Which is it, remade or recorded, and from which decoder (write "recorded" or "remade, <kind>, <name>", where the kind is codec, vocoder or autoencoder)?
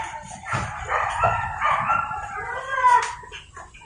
remade, vocoder, BigVGAN v2